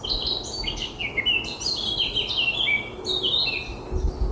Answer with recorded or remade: recorded